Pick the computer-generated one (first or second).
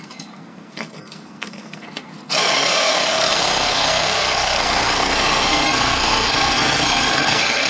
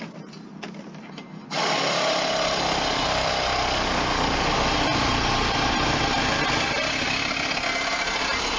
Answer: first